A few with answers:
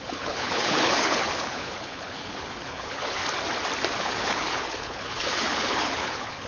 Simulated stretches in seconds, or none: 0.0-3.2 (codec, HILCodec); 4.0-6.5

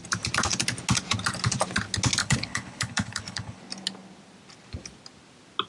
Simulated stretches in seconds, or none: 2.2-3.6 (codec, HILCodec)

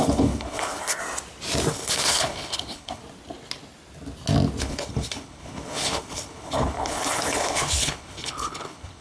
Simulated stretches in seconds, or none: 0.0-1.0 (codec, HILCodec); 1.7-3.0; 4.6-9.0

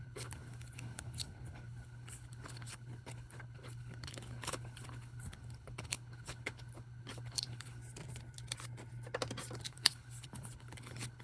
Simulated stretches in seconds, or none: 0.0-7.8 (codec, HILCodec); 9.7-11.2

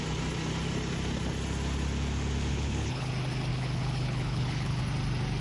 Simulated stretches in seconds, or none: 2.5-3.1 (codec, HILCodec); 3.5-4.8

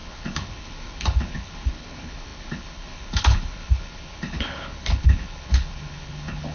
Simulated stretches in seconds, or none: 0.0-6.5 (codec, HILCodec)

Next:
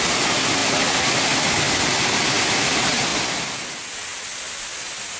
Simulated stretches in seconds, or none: none